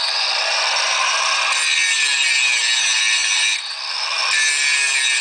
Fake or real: real